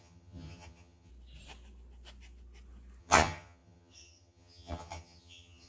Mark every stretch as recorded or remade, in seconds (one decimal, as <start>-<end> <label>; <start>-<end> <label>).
0.0-1.1 remade; 1.1-3.0 recorded; 3.0-5.7 remade

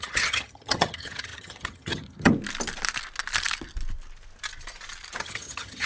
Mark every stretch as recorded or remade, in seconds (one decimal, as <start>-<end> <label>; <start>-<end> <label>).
0.0-2.3 remade; 2.3-5.2 recorded; 5.2-5.9 remade

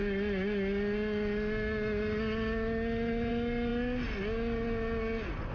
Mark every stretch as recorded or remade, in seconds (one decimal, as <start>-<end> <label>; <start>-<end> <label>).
0.0-5.5 recorded

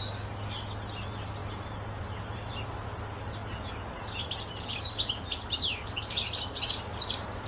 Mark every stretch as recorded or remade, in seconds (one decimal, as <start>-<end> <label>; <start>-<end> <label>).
0.0-7.5 recorded

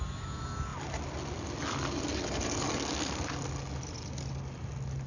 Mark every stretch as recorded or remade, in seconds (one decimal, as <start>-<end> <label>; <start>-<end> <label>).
0.0-5.1 recorded